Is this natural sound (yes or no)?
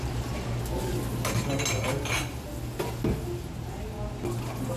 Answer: yes